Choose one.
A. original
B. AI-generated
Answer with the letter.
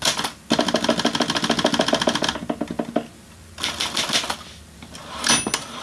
A